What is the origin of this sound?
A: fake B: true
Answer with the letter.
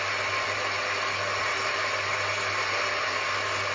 B